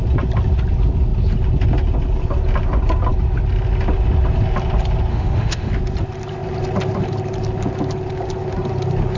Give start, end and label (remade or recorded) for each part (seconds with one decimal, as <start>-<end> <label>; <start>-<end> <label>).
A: 0.0-5.1 recorded; 5.1-5.7 remade; 5.7-9.2 recorded